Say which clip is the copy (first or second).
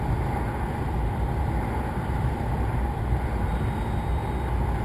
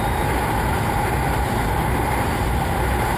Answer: second